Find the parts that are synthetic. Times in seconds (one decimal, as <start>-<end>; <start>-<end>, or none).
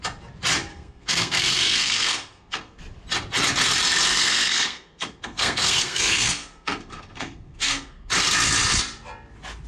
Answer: 0.7-2.8; 4.1-8.1